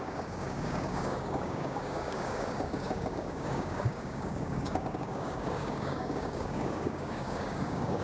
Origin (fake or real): fake